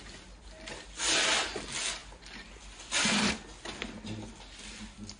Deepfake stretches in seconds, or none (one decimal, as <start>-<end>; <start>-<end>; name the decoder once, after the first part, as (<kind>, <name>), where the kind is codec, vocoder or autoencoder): none